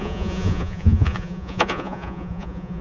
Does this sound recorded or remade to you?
remade